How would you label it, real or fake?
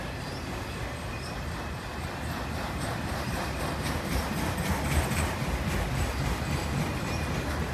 fake